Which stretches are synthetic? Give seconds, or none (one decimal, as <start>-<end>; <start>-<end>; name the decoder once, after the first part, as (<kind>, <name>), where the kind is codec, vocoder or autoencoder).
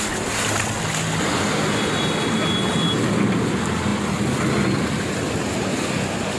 none